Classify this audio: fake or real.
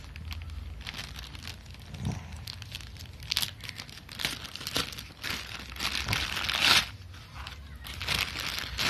real